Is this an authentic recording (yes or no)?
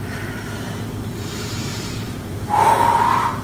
no